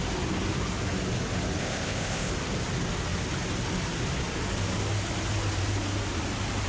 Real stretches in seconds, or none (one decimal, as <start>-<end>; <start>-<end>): 0.0-1.6; 2.3-6.7